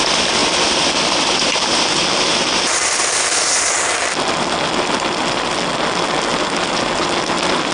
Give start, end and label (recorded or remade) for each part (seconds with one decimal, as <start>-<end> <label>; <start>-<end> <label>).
0.0-7.7 recorded